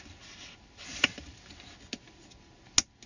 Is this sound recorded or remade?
recorded